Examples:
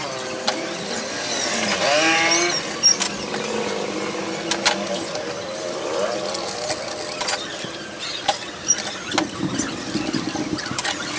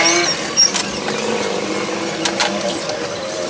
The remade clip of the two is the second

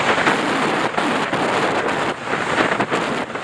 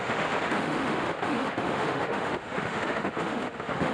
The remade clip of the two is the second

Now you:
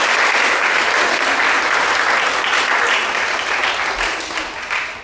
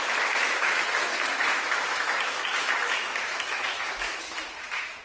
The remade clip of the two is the second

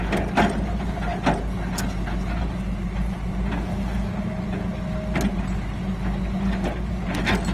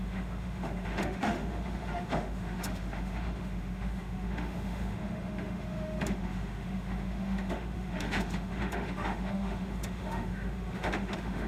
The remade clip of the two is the second